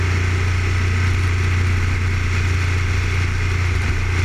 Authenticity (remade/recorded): recorded